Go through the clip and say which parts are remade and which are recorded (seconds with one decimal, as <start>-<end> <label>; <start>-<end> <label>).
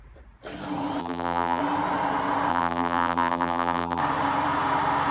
0.0-1.0 recorded; 1.0-1.6 remade; 1.6-2.5 recorded; 2.5-4.0 remade; 4.0-5.1 recorded